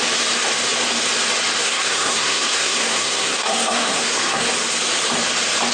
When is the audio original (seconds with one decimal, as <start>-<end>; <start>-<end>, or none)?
0.0-1.6; 4.5-5.7